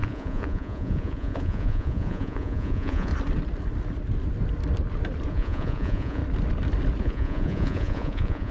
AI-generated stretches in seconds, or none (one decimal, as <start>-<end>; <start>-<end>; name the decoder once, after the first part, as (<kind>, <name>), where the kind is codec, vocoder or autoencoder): 0.0-3.1 (vocoder, Vocos); 5.3-6.2; 7.0-8.5